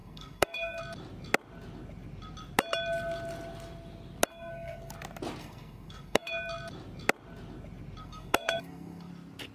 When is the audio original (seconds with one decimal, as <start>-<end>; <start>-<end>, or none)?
0.8-4.3; 4.9-5.4; 6.3-8.0; 9.1-9.5